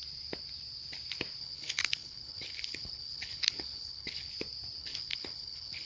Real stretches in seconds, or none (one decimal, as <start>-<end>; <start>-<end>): 0.0-1.4; 4.3-4.8